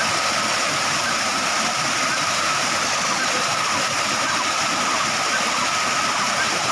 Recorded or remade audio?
recorded